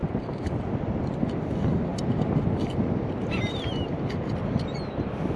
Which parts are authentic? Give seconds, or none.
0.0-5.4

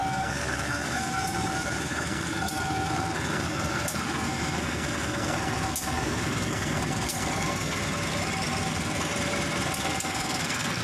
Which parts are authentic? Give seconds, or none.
7.8-8.7; 9.1-9.8

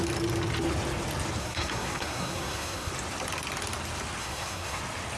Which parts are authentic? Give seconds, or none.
0.0-1.4; 2.9-4.2; 4.8-5.2

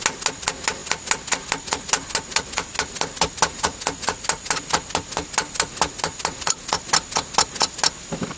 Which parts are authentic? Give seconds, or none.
0.0-8.4